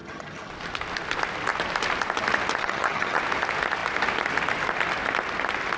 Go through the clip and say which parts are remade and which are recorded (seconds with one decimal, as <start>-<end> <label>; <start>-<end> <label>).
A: 0.0-0.5 remade; 0.5-2.6 recorded; 2.6-3.2 remade; 3.2-5.8 recorded